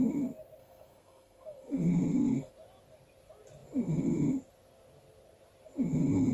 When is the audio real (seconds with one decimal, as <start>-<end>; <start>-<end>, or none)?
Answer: 0.0-0.6; 2.5-6.3